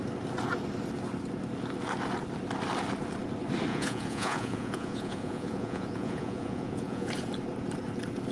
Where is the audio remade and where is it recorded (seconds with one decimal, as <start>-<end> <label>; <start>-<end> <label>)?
0.0-3.7 recorded; 3.7-7.1 remade; 7.1-8.3 recorded